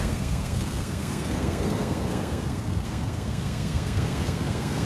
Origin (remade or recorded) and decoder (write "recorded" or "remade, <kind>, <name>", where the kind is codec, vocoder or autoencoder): remade, codec, SNAC